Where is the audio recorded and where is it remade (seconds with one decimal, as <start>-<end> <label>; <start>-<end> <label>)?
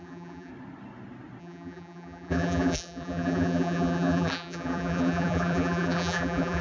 0.0-0.5 remade; 0.5-1.4 recorded; 1.4-6.6 remade